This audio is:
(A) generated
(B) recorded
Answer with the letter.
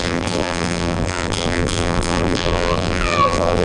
A